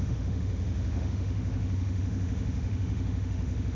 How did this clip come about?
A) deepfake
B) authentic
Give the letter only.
A